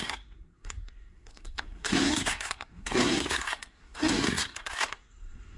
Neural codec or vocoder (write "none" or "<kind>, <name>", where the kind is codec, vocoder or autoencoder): codec, SNAC